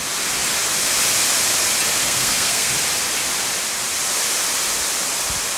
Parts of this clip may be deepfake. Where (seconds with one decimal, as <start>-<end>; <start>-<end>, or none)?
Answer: 2.0-2.7